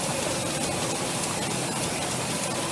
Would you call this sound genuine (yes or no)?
yes